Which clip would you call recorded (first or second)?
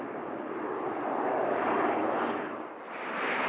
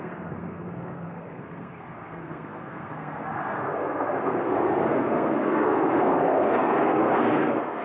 first